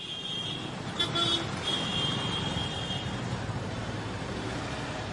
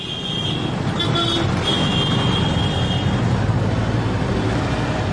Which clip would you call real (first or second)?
second